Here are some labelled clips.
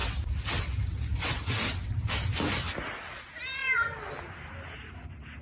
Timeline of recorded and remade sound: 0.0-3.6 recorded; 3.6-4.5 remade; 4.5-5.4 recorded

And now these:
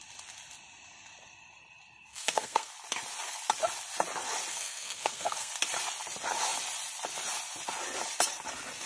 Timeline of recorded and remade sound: 0.0-2.1 recorded; 2.1-2.7 remade; 2.7-4.5 recorded; 4.5-5.5 remade; 5.5-8.9 recorded

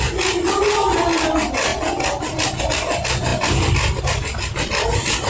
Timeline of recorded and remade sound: 0.0-5.3 recorded